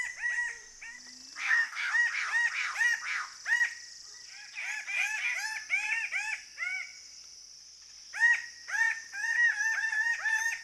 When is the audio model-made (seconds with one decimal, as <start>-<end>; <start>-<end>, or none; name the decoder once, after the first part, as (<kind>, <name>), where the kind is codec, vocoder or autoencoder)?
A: 1.4-1.9 (codec, DAC)